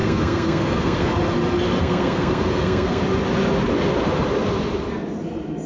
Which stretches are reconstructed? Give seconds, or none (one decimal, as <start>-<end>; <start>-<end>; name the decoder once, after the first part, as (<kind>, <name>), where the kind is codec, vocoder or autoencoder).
0.0-1.1 (codec, SNAC); 1.8-3.0